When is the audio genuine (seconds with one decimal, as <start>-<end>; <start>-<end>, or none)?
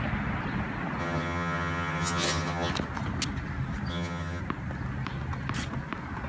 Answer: 0.0-1.0; 2.7-3.9; 4.4-6.3